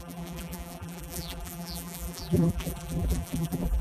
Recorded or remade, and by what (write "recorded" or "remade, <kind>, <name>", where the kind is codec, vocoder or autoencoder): remade, vocoder, BigVGAN v2